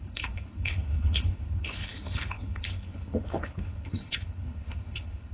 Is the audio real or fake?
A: fake